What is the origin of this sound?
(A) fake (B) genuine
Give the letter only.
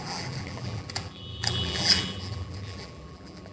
A